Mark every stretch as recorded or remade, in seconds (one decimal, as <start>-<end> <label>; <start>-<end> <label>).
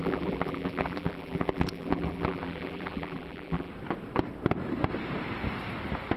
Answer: 0.0-3.7 remade; 3.7-6.2 recorded